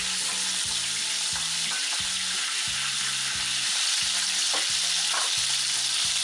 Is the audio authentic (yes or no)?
yes